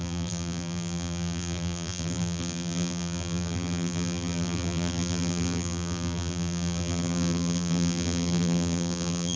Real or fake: fake